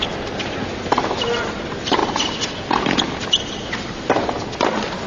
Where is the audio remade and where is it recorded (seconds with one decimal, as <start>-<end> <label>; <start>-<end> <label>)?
0.0-5.1 recorded